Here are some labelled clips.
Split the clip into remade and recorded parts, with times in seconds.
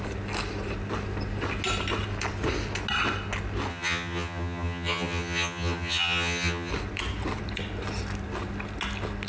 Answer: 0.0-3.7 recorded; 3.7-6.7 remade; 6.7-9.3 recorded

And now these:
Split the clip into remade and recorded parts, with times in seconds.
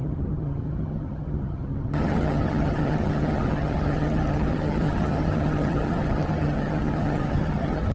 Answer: 0.0-7.9 remade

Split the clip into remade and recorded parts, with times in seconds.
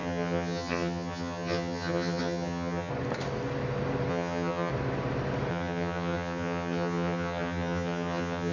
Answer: 0.0-2.9 remade; 2.9-4.1 recorded; 4.1-4.7 remade; 4.7-5.5 recorded; 5.5-8.5 remade